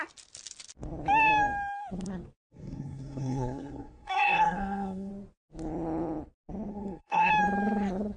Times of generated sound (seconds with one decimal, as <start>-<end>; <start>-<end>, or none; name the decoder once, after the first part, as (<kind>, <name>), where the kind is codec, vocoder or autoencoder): 2.4-5.1 (codec, SNAC); 6.7-7.3